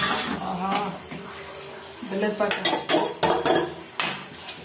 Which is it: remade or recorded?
recorded